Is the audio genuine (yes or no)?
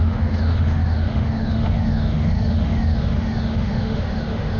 no